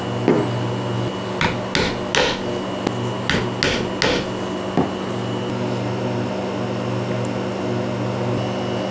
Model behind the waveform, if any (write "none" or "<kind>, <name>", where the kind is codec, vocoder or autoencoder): none